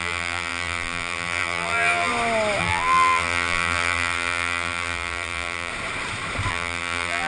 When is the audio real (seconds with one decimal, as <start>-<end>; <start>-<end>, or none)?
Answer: 2.1-2.6; 5.7-6.5

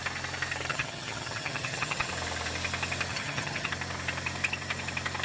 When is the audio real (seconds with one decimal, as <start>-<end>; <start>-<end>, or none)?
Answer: 0.0-0.7; 2.1-3.1; 3.7-5.2